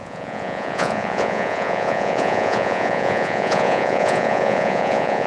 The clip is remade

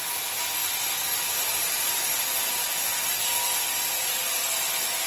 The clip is recorded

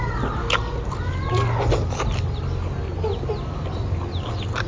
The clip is recorded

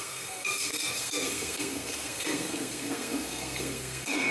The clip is remade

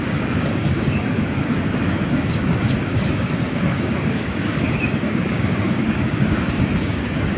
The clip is remade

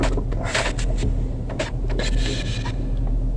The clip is recorded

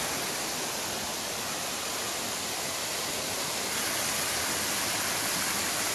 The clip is recorded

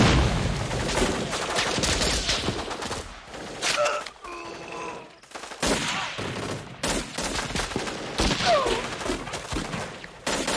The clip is recorded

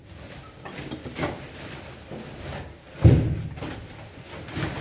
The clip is recorded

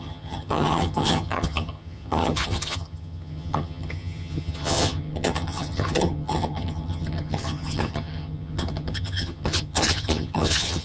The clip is remade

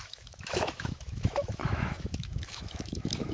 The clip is remade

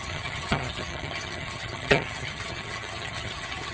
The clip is remade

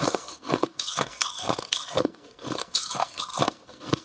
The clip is remade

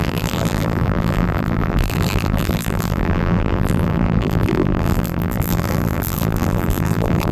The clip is remade